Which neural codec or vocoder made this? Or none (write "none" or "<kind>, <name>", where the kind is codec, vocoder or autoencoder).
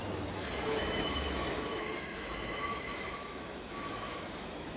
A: autoencoder, DAC-VAE